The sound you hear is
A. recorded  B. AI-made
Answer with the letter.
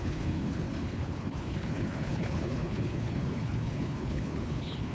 B